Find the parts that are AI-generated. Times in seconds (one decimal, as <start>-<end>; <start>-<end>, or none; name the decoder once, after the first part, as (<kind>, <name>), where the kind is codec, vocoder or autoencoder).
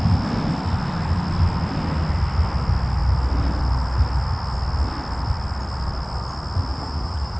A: 6.7-7.4 (vocoder, Vocos)